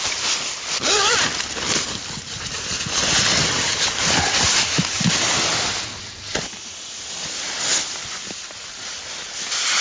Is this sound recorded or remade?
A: recorded